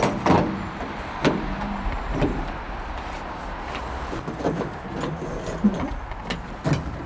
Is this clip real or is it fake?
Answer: real